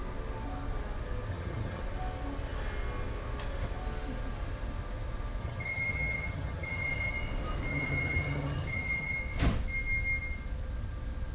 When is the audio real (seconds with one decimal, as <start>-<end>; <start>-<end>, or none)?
0.0-1.3; 1.8-5.4; 7.1-7.7; 9.2-11.3